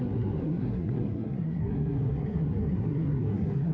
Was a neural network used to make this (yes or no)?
yes